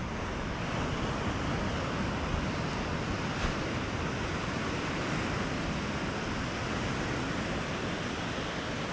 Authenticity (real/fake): real